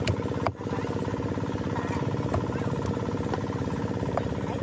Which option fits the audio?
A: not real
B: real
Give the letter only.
B